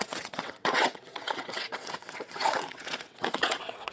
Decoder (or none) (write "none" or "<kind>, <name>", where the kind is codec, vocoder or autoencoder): vocoder, WaveNeXt